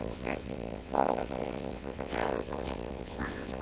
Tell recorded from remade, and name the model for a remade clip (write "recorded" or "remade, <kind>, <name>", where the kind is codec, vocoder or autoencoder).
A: remade, vocoder, WaveNeXt